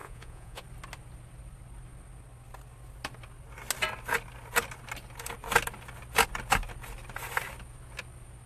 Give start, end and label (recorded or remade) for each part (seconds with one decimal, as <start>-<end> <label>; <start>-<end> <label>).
0.0-0.6 remade; 0.6-8.5 recorded